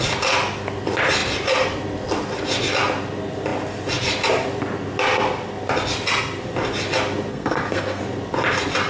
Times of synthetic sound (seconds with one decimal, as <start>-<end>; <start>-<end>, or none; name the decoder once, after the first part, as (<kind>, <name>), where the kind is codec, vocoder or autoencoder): 7.3-8.0 (codec, SNAC)